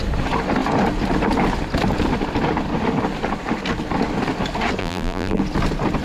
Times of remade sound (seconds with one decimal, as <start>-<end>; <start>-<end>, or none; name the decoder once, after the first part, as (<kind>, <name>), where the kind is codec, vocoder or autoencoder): 4.8-5.4 (vocoder, BigVGAN v2)